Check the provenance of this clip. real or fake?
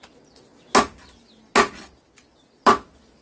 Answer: real